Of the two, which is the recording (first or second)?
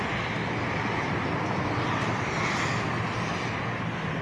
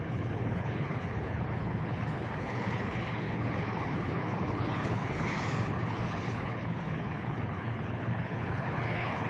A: first